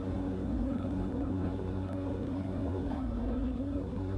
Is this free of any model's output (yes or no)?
no